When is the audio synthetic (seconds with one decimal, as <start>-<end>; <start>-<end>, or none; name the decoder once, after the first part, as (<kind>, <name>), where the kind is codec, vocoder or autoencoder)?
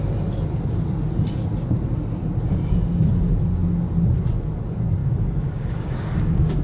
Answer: 5.0-6.6 (codec, DAC)